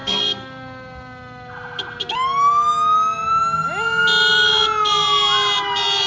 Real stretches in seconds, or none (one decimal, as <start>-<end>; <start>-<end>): 0.0-6.1